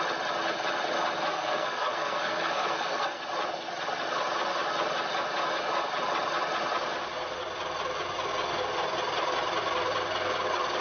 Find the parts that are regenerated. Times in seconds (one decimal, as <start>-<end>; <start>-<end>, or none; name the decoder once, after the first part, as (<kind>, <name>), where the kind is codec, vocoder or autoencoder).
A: 1.3-3.2 (codec, SNAC)